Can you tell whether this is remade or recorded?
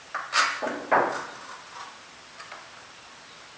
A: recorded